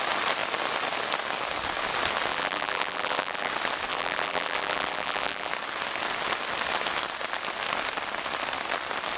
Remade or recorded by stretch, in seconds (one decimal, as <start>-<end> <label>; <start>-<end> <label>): 0.0-2.3 recorded; 2.3-3.5 remade; 3.5-3.9 recorded; 3.9-5.5 remade; 5.5-9.2 recorded